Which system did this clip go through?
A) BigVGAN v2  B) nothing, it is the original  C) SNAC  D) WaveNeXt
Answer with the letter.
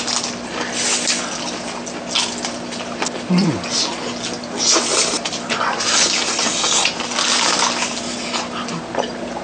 B